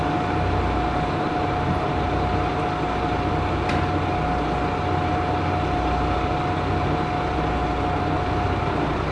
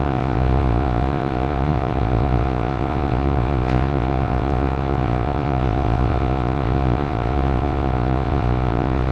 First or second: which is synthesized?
second